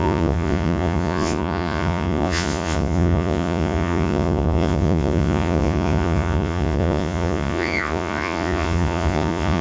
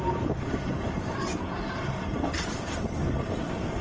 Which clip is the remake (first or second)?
first